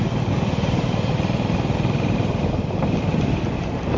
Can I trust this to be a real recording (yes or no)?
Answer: yes